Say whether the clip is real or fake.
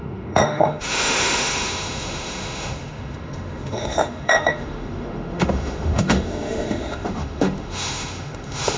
fake